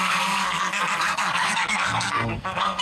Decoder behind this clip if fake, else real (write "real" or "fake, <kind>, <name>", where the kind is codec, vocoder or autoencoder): fake, codec, SNAC